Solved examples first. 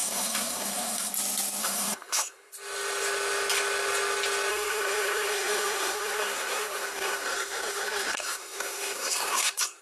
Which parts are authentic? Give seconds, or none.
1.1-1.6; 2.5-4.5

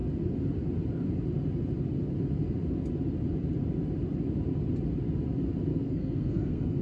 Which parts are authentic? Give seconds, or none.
0.0-5.7

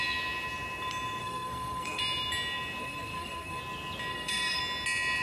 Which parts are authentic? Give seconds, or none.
0.0-1.2; 2.0-2.8; 3.6-4.1; 4.6-5.2

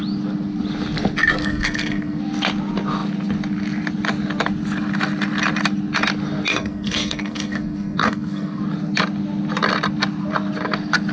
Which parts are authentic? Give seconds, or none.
0.0-1.4; 2.2-6.5; 8.6-11.1

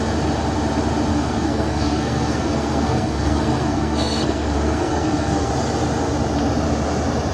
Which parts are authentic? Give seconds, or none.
0.0-1.1; 5.5-7.3

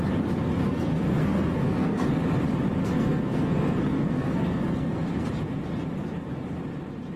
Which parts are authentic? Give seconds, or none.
0.0-0.6; 2.1-2.8; 5.3-7.2

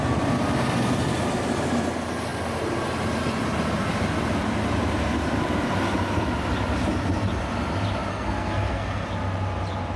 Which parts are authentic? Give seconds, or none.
0.0-8.1; 9.1-10.0

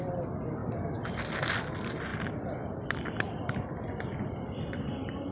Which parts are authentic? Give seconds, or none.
0.0-5.3